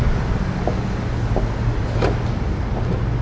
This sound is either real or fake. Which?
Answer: real